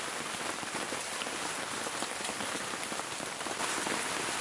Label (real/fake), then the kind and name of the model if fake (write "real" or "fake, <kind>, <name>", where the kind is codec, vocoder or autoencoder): real